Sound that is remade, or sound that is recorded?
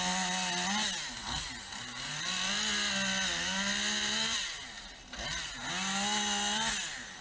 recorded